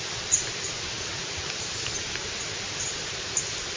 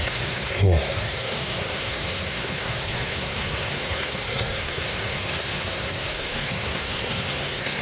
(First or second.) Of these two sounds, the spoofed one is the second